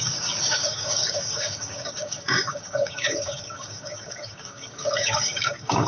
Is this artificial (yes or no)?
yes